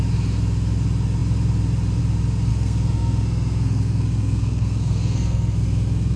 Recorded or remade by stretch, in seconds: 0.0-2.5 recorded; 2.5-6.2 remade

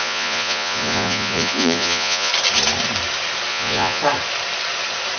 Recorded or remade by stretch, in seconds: 0.0-2.3 remade; 2.3-3.5 recorded; 3.5-4.0 remade; 4.0-5.2 recorded

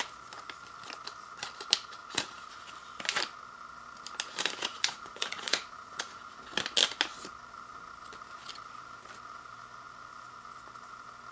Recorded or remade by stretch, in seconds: 0.0-2.0 recorded; 2.0-2.7 remade; 2.7-4.7 recorded; 4.7-6.4 remade; 6.4-11.3 recorded

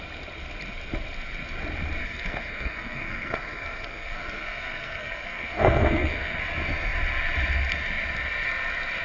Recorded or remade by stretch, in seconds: 0.0-2.0 recorded; 2.0-6.4 remade; 6.4-9.0 recorded

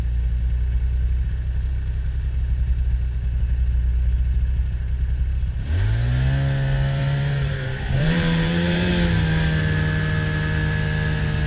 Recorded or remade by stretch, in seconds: 0.0-7.0 recorded; 7.0-8.9 remade; 8.9-11.5 recorded